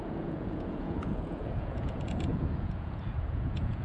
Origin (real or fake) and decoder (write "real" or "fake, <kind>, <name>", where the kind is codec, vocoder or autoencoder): fake, vocoder, Vocos